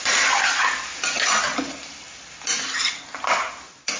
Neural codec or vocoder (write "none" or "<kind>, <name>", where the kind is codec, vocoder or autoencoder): none